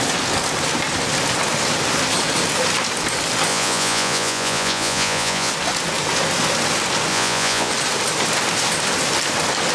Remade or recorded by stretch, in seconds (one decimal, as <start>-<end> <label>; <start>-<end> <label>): 0.0-3.5 recorded; 3.5-5.5 remade; 5.5-7.1 recorded; 7.1-7.7 remade; 7.7-9.7 recorded